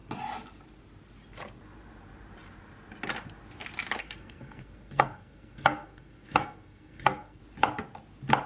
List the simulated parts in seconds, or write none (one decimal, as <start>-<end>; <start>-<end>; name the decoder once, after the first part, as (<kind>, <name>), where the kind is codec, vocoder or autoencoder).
4.0-7.4 (codec, SNAC)